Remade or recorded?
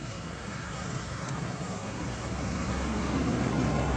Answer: remade